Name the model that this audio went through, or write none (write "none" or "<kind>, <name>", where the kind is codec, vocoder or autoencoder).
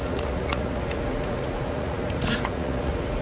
vocoder, Vocos